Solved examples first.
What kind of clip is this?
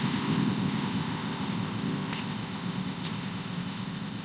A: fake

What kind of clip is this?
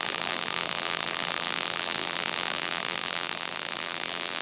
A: fake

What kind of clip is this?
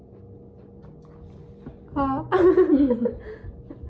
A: real